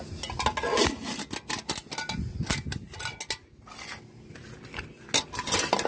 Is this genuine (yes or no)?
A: yes